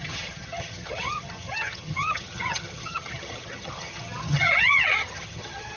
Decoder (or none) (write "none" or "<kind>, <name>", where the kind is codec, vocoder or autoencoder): vocoder, HiFi-GAN